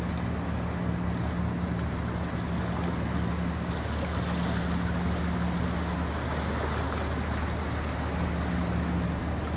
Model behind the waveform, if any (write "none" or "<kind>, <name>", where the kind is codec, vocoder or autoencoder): none